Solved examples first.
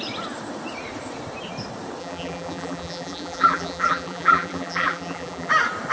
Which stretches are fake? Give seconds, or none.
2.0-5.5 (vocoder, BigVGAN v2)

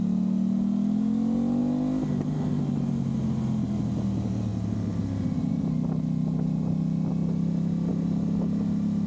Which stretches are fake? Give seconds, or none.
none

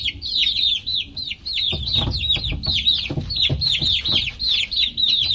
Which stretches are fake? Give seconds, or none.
0.0-0.4 (vocoder, BigVGAN v2); 1.4-2.3; 4.6-5.3